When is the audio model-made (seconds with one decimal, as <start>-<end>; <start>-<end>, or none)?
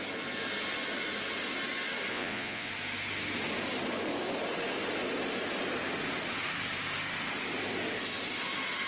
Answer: 2.1-2.7